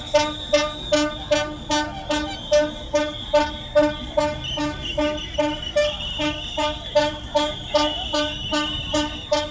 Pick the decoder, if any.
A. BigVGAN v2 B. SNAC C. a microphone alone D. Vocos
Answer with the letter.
C